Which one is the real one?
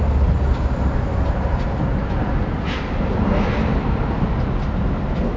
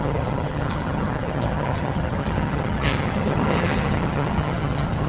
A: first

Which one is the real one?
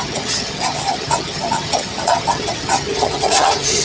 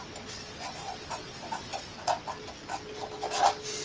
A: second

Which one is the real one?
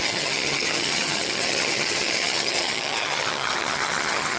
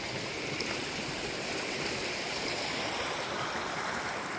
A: second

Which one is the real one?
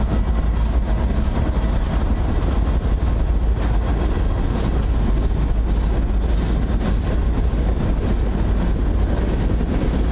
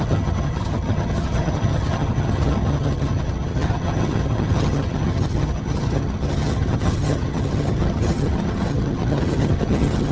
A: first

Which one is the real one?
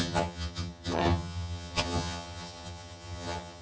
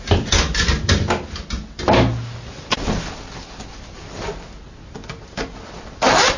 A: second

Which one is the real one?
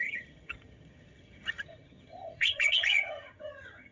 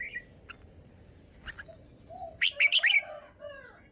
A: second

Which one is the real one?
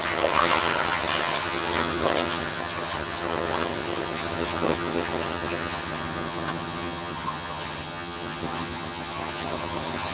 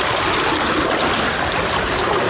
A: second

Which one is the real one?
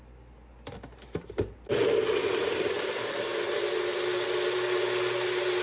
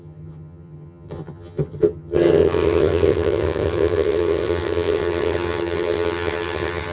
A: first